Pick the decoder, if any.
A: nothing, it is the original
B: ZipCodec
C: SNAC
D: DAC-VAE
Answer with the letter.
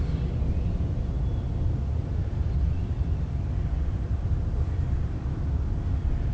A